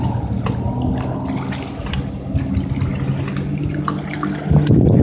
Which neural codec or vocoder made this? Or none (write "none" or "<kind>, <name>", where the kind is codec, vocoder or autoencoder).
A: none